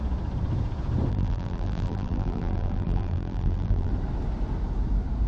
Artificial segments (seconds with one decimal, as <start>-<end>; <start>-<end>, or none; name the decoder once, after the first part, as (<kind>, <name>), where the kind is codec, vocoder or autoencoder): 1.1-3.9 (vocoder, BigVGAN v2)